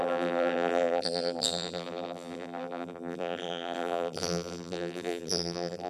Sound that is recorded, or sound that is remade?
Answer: remade